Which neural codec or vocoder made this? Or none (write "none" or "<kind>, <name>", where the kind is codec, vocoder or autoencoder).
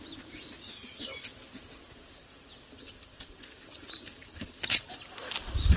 none